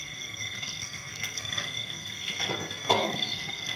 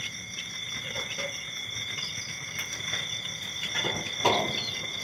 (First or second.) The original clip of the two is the second